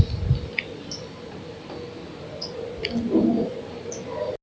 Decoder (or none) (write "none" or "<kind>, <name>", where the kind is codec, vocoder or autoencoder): none